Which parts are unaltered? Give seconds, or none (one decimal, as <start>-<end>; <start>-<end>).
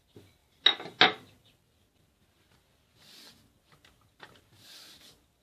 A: 0.0-5.4